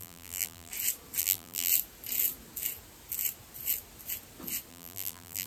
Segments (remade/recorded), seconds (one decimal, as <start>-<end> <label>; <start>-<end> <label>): 0.0-0.7 remade; 0.7-1.2 recorded; 1.2-1.7 remade; 1.7-4.7 recorded; 4.7-5.5 remade